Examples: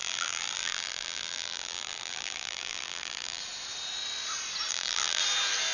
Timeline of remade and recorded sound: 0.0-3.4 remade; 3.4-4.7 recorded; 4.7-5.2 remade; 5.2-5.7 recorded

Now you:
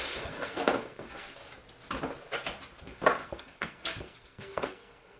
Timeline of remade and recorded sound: 0.0-1.4 remade; 1.4-2.8 recorded; 2.8-5.2 remade

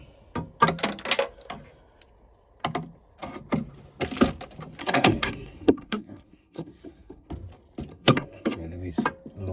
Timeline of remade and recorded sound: 0.0-4.8 recorded; 4.8-7.3 remade; 7.3-7.9 recorded; 7.9-8.9 remade; 8.9-9.5 recorded

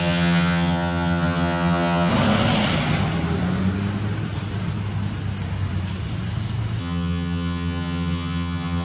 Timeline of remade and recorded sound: 0.0-2.1 remade; 2.1-6.8 recorded; 6.8-8.8 remade

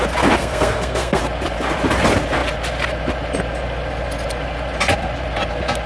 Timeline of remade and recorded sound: 0.0-0.4 recorded; 0.4-1.2 remade; 1.2-5.9 recorded

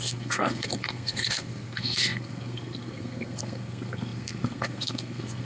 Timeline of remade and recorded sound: 0.0-5.4 remade

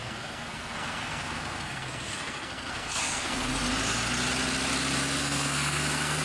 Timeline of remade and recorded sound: 0.0-3.5 remade; 3.5-5.2 recorded; 5.2-6.2 remade